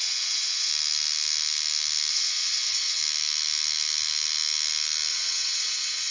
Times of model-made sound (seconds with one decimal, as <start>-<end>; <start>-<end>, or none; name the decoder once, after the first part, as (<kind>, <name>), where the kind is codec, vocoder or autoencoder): 0.0-0.7 (vocoder, WaveNeXt); 2.1-3.0; 5.1-6.1